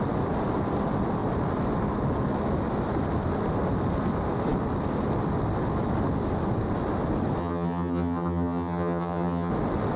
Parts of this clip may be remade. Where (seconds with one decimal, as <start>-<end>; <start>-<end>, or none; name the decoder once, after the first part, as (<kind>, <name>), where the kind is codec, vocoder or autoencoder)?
7.4-9.5 (vocoder, HiFi-GAN)